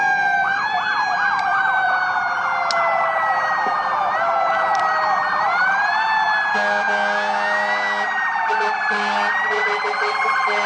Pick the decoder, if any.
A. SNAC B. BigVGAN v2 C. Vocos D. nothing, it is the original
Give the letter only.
D